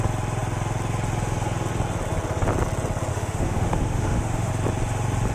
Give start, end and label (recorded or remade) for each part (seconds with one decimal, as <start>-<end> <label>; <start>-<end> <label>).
0.0-3.1 recorded; 3.1-4.5 remade; 4.5-5.3 recorded